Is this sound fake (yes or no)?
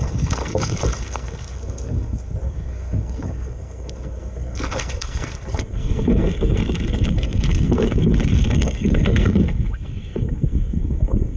yes